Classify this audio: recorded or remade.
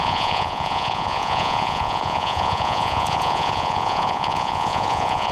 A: remade